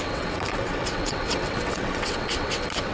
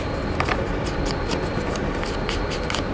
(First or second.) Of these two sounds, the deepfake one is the first